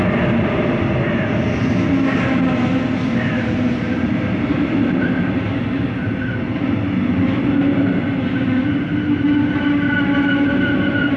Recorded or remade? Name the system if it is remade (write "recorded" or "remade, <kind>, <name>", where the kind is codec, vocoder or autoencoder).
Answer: recorded